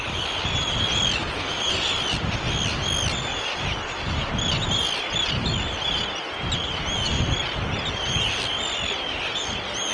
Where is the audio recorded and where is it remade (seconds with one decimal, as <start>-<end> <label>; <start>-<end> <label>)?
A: 0.0-1.2 recorded; 1.2-1.7 remade; 1.7-9.9 recorded